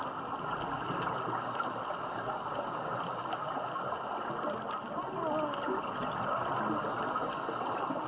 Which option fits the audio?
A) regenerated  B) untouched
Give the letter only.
B